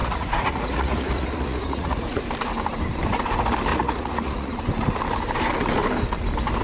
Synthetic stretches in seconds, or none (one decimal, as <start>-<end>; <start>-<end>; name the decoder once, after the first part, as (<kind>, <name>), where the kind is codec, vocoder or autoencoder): 0.0-2.2 (vocoder, Vocos); 3.7-4.6